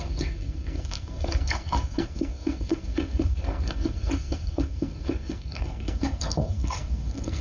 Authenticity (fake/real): fake